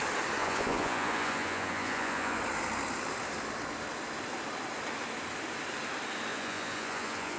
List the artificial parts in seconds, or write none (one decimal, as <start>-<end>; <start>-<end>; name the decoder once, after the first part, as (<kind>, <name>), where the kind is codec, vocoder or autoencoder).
0.4-2.4 (vocoder, Vocos); 6.3-7.4